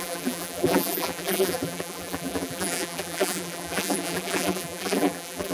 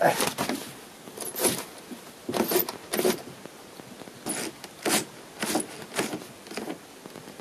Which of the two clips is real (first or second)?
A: second